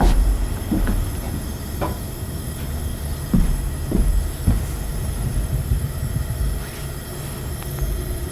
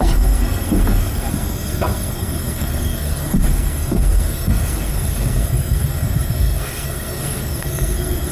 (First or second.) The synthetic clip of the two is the second